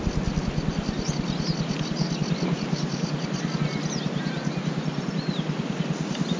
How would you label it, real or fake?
real